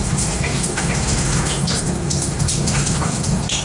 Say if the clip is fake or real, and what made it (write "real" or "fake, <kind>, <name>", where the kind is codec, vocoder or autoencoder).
fake, codec, SNAC